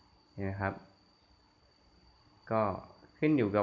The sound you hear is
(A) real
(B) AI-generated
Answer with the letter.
A